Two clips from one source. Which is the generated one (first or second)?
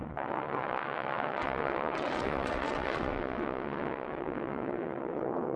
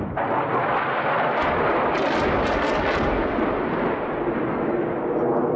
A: first